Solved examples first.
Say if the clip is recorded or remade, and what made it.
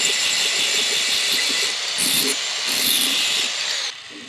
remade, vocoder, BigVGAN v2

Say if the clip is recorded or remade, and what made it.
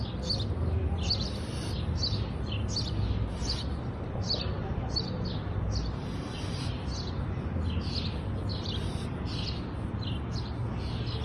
recorded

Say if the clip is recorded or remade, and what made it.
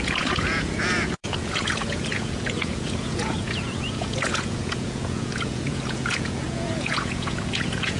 remade, vocoder, Vocos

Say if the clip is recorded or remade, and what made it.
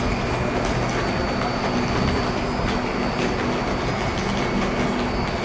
recorded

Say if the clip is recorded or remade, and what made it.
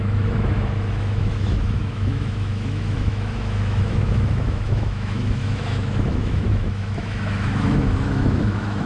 remade, autoencoder, DAC-VAE